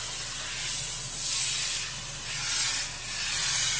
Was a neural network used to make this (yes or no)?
no